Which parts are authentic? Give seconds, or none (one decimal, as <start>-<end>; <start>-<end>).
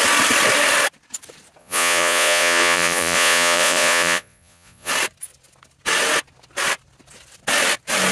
0.0-1.6; 4.9-8.1